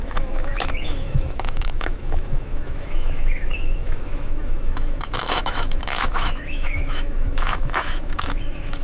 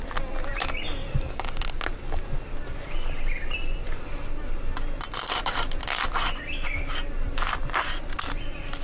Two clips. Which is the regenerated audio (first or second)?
first